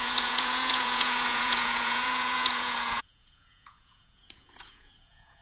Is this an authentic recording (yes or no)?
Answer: no